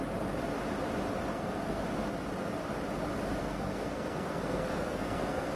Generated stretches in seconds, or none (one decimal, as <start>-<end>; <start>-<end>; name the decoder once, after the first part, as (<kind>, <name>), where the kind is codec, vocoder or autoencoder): 1.3-1.8 (codec, SNAC); 3.4-5.6